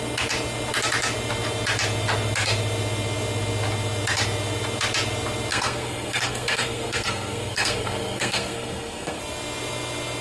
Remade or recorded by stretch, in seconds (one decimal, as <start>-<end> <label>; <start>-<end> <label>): 0.0-5.5 recorded; 5.5-9.2 remade; 9.2-10.2 recorded